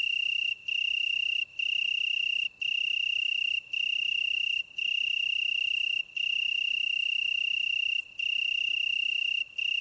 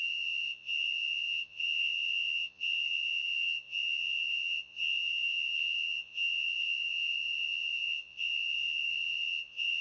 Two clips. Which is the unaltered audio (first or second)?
first